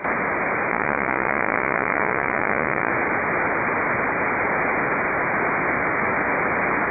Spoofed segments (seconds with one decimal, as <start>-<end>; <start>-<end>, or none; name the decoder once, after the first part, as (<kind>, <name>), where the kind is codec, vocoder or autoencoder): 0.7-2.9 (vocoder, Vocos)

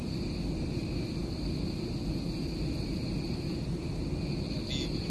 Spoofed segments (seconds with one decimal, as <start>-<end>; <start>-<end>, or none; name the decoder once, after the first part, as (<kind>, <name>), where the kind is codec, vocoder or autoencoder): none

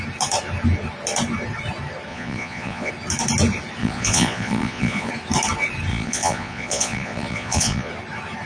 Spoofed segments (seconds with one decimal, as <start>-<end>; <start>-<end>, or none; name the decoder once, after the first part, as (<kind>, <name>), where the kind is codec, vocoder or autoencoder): 2.1-2.9 (vocoder, Vocos); 3.8-5.1; 5.9-7.9